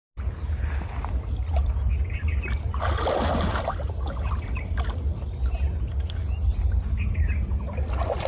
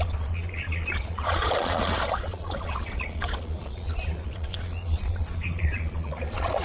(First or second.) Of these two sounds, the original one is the first